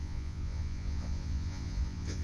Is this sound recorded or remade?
remade